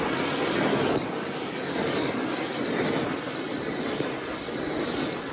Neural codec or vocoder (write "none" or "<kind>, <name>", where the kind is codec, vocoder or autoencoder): none